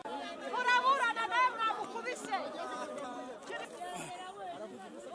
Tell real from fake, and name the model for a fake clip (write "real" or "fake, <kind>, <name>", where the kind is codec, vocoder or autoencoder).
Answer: real